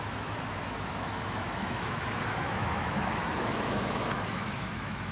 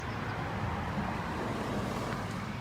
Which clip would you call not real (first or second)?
first